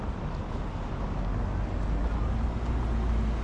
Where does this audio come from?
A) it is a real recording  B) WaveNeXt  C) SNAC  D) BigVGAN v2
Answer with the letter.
A